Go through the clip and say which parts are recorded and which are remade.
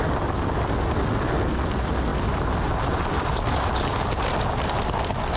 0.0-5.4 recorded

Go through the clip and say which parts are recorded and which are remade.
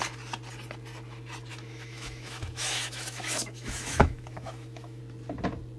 0.0-1.5 recorded; 1.5-5.0 remade; 5.0-5.8 recorded